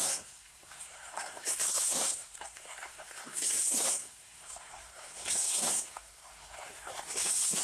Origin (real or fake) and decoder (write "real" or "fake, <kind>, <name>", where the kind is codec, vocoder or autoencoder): fake, codec, SNAC